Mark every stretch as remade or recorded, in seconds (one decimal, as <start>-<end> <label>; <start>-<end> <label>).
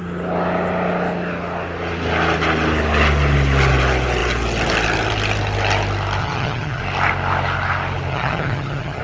0.0-6.2 recorded; 6.2-6.8 remade; 6.8-8.1 recorded; 8.1-9.0 remade